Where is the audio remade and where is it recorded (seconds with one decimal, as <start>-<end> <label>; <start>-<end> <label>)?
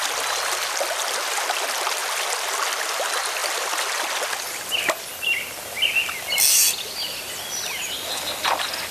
0.0-8.9 recorded